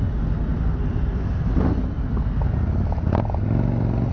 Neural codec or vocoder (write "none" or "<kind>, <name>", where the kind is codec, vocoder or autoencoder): none